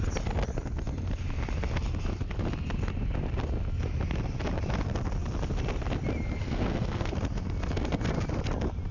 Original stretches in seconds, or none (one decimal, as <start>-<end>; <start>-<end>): 0.0-6.4; 7.1-8.9